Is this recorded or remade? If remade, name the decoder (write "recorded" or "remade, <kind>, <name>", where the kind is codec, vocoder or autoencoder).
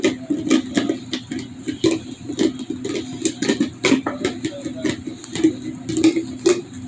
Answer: recorded